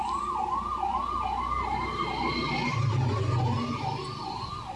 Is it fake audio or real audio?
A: real